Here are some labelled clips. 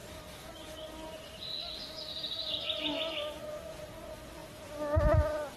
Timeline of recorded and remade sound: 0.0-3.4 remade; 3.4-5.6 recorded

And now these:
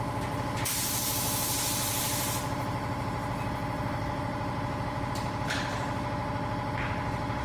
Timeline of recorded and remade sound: 0.0-7.4 recorded